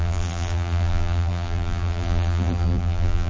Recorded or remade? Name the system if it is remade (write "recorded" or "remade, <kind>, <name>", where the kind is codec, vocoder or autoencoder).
remade, vocoder, BigVGAN v2